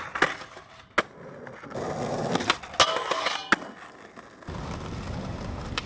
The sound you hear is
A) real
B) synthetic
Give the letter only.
A